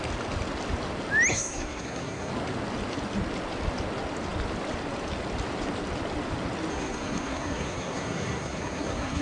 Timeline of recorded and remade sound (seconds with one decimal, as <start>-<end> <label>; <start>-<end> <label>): 0.0-1.3 recorded; 1.3-2.3 remade; 2.3-6.7 recorded; 6.7-9.2 remade